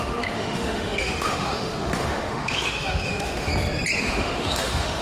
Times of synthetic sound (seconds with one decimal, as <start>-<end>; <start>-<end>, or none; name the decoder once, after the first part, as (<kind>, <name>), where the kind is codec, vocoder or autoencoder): 0.0-3.5 (autoencoder, DAC-VAE); 4.0-5.0